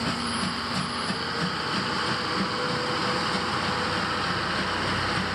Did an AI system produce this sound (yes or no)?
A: no